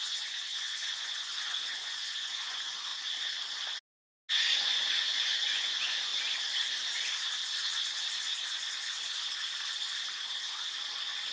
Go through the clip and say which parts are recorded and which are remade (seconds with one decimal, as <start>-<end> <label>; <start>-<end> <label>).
0.0-2.9 remade; 2.9-4.3 recorded; 4.3-6.1 remade; 6.1-11.3 recorded